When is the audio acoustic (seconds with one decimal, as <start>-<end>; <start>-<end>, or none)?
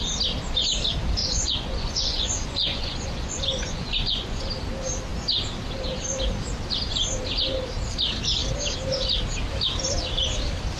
0.0-1.2; 4.5-10.8